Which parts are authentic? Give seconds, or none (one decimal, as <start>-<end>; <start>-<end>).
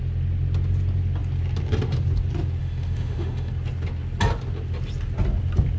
0.0-2.6; 3.5-5.8